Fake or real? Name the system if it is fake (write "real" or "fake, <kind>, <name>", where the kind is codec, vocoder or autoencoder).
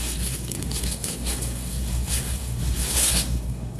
fake, codec, SNAC